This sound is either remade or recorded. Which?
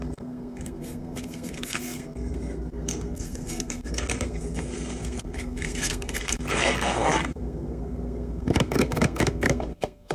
remade